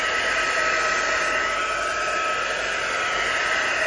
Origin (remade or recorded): recorded